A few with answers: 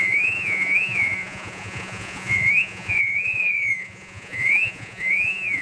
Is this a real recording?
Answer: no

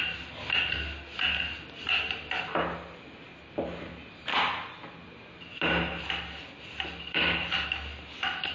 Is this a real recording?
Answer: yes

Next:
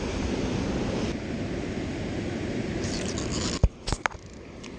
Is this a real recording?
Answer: yes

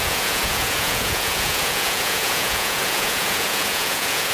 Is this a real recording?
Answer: no